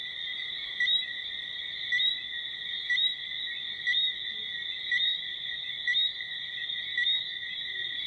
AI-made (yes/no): no